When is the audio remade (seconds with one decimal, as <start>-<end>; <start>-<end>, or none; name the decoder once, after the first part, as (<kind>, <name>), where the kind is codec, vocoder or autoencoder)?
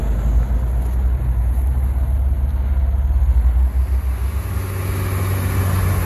none